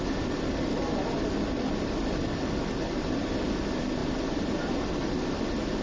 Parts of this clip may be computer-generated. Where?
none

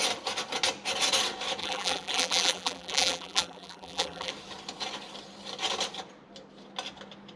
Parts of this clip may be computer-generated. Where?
1.6-4.3 (vocoder, BigVGAN v2)